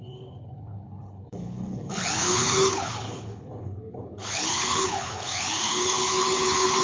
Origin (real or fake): fake